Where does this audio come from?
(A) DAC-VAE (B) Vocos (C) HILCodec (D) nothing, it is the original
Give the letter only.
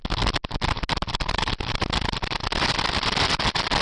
D